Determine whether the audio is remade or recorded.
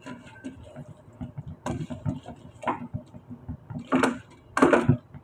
recorded